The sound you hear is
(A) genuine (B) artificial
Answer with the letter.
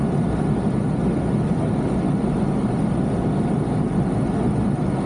A